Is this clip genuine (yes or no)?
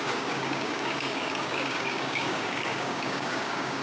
no